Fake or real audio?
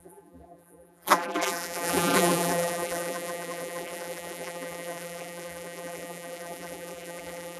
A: fake